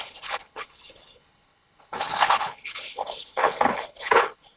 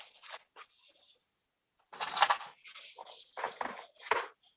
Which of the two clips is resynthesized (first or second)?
first